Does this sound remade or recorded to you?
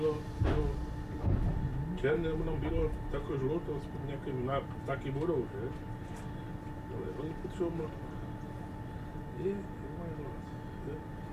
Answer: recorded